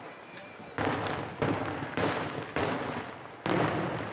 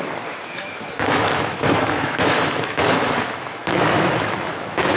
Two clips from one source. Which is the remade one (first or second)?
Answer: second